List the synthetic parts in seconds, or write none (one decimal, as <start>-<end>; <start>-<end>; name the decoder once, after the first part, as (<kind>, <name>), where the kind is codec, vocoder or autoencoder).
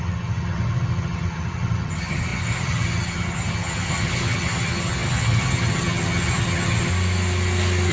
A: 0.0-6.9 (vocoder, HiFi-GAN)